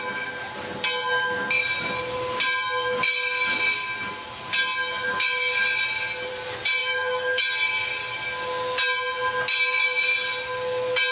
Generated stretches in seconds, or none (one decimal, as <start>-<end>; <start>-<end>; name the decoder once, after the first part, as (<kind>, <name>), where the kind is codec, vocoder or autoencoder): 6.8-7.4 (autoencoder, DAC-VAE)